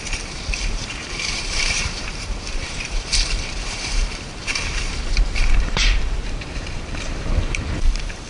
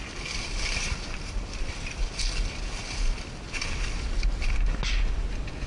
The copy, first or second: first